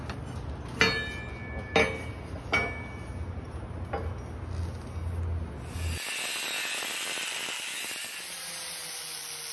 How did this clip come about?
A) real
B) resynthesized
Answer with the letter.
A